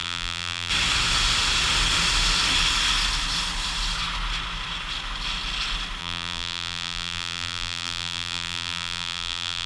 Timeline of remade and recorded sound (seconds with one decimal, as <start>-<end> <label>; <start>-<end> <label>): 0.0-0.7 remade; 0.7-6.0 recorded; 6.0-9.7 remade